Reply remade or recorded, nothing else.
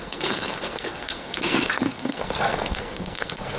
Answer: remade